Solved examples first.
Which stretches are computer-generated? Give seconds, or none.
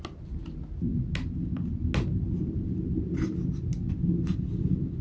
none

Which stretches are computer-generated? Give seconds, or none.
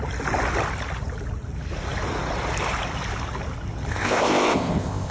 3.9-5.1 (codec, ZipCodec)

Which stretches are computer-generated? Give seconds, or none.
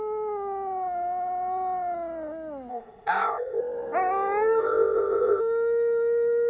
2.7-3.6 (codec, ZipCodec); 4.6-5.4